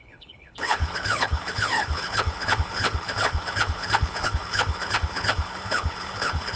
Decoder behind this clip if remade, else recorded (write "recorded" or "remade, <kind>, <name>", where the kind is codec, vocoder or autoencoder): remade, codec, HILCodec